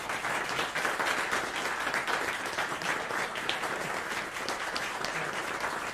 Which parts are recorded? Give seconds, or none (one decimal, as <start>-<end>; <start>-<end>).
0.0-2.0; 5.5-5.9